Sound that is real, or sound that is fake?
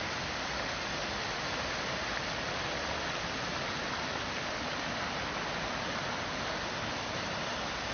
real